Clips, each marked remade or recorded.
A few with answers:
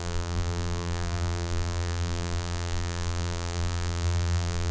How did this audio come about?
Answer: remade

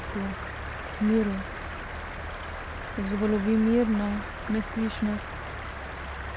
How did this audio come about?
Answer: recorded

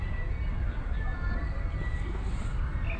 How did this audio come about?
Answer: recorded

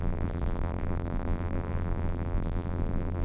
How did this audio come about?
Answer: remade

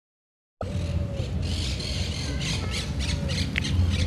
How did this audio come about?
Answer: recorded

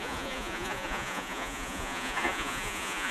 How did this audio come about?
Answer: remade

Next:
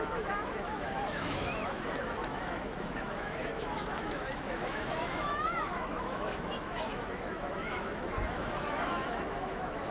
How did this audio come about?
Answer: remade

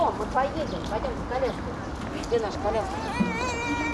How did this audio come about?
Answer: recorded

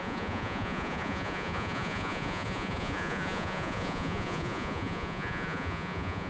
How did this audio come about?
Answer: remade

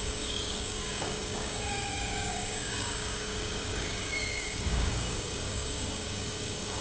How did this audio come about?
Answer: remade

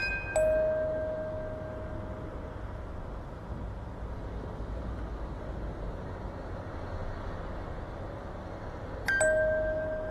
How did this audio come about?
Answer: recorded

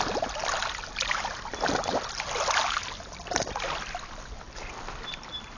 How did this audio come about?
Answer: recorded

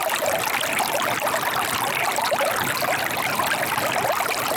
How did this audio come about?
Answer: recorded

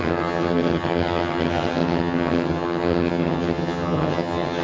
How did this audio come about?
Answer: remade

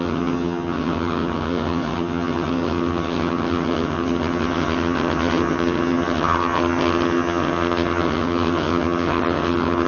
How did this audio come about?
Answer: remade